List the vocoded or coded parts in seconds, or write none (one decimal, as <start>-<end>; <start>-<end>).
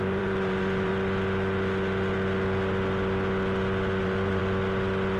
0.0-0.9; 4.0-4.4